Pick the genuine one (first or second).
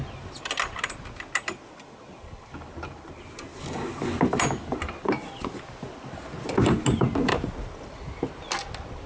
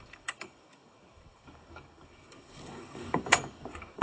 first